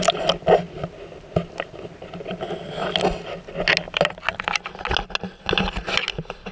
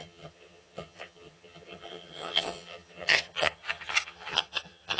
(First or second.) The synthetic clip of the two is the second